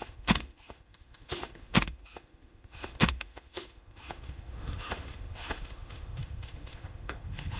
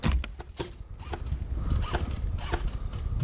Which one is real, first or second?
second